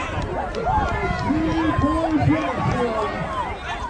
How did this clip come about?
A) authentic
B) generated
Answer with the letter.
A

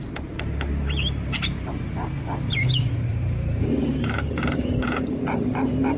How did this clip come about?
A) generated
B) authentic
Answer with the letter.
A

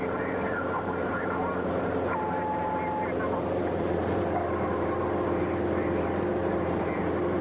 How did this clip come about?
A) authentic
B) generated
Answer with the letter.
B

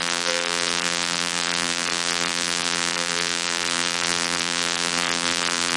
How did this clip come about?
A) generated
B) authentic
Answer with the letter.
A